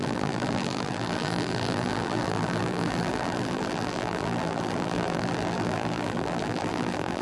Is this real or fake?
fake